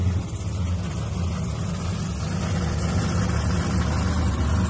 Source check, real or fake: real